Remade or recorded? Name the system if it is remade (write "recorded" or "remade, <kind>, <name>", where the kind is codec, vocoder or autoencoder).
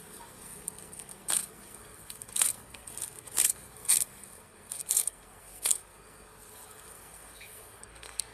remade, codec, SNAC